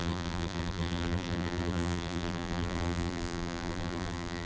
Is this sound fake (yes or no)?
yes